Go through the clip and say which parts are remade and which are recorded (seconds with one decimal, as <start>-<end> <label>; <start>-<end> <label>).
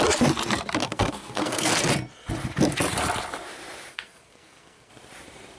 0.0-0.8 recorded; 0.8-1.8 remade; 1.8-3.9 recorded; 3.9-4.9 remade; 4.9-5.6 recorded